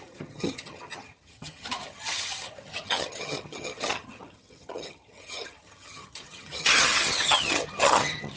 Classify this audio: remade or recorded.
remade